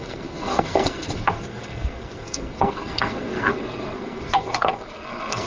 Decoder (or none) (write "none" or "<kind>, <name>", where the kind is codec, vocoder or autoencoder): codec, SNAC